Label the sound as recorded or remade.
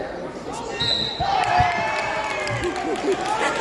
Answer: recorded